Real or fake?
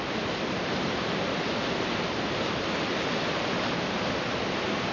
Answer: real